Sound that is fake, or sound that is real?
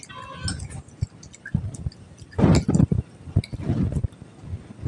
real